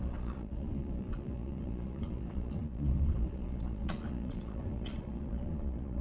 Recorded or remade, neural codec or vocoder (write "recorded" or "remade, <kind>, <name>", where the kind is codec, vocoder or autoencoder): remade, vocoder, Vocos